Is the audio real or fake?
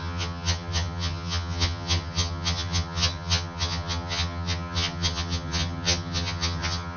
fake